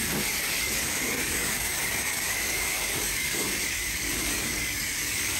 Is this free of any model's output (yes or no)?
no